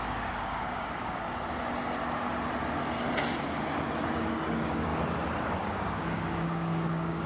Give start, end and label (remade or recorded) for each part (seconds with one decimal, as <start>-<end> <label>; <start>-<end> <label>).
0.0-1.2 remade; 1.2-4.3 recorded; 4.3-4.9 remade; 4.9-5.5 recorded; 5.5-7.3 remade